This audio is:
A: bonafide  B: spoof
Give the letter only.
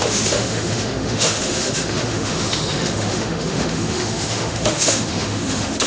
B